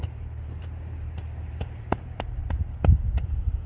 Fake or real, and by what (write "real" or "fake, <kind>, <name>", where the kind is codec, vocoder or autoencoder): fake, vocoder, BigVGAN v2